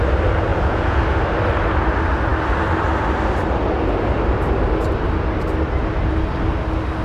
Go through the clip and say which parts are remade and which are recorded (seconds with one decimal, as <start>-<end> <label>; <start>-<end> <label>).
0.0-0.5 recorded; 0.5-1.0 remade; 1.0-7.0 recorded